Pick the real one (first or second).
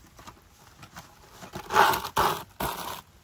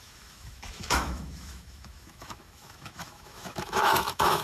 first